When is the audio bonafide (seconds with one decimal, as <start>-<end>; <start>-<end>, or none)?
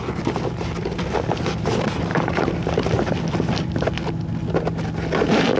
0.0-5.6